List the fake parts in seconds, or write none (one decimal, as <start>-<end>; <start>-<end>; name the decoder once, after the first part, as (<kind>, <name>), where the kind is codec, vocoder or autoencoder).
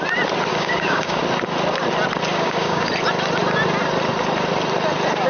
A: 0.5-1.2 (codec, DAC); 2.3-2.9